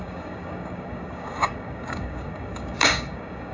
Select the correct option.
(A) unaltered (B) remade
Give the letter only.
B